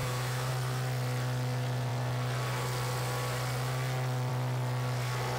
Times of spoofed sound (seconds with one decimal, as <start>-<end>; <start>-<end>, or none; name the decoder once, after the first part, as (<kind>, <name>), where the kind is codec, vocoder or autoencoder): 0.0-0.5 (autoencoder, DAC-VAE)